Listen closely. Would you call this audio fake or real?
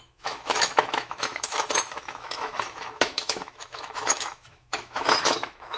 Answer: fake